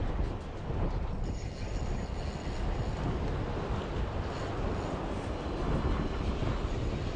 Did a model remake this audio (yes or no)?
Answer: no